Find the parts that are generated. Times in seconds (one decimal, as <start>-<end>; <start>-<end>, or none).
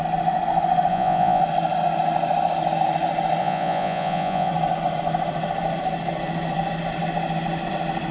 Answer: 0.9-1.4; 3.4-4.5